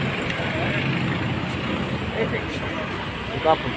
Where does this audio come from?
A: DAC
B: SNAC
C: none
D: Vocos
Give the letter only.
C